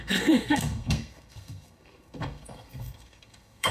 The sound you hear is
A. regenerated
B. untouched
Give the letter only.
A